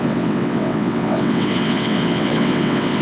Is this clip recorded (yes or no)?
no